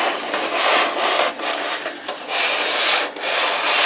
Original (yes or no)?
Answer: yes